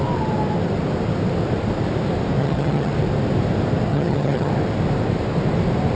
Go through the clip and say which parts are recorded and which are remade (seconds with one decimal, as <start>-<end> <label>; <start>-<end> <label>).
0.0-2.4 recorded; 2.4-2.9 remade; 2.9-3.9 recorded; 3.9-4.5 remade; 4.5-5.9 recorded